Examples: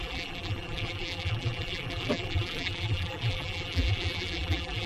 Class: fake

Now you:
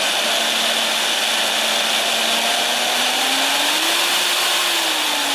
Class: real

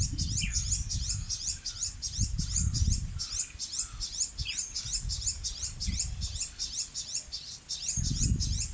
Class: real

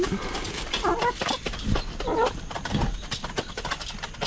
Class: real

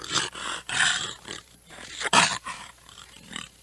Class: fake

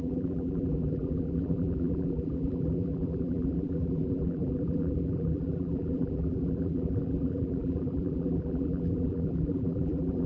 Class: fake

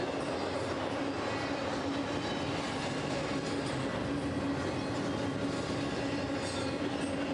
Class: real